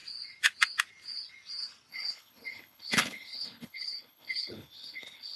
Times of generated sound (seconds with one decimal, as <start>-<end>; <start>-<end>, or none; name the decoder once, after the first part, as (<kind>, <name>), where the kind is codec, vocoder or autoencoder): 1.9-5.4 (codec, HILCodec)